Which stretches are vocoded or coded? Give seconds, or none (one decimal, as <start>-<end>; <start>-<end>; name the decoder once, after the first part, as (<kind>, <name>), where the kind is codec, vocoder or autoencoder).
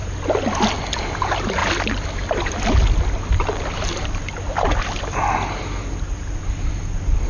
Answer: none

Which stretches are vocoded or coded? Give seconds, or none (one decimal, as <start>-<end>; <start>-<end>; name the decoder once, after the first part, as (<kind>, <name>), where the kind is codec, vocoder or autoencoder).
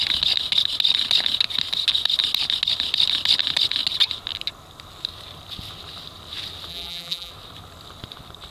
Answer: 6.7-7.3 (vocoder, BigVGAN v2)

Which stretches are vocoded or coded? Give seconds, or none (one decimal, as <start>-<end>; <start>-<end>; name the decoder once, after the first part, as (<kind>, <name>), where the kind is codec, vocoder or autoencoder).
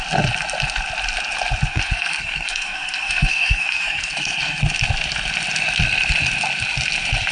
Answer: 1.7-4.6 (codec, SNAC)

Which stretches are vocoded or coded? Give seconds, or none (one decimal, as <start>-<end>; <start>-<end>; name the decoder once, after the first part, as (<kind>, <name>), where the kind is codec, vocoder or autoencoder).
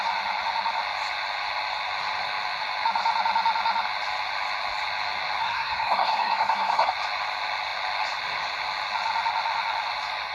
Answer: 5.4-6.9 (codec, SNAC)